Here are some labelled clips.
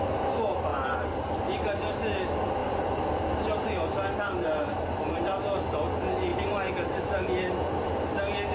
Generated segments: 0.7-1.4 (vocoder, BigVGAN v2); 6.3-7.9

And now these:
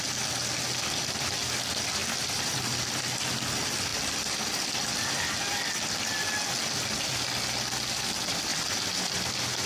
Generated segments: 2.0-3.0 (vocoder, BigVGAN v2); 3.9-5.1; 8.5-9.1

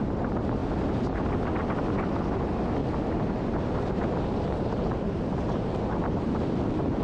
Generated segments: 2.8-7.0 (vocoder, BigVGAN v2)

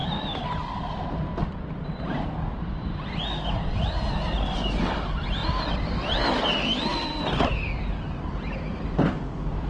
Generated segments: 5.4-7.7 (vocoder, BigVGAN v2)

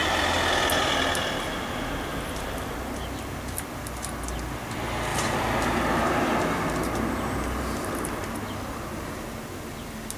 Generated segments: 2.1-2.9 (vocoder, BigVGAN v2); 5.1-8.3

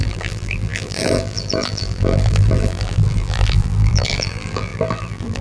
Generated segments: 0.0-5.4 (vocoder, BigVGAN v2)

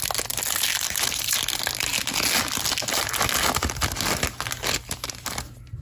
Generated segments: 0.7-1.4 (vocoder, BigVGAN v2)